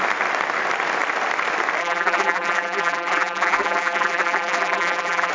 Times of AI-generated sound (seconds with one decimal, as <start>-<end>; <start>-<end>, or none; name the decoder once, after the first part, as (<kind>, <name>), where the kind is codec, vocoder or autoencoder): 1.8-5.3 (vocoder, BigVGAN v2)